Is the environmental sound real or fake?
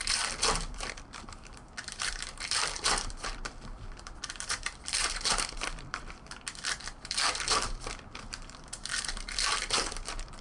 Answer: fake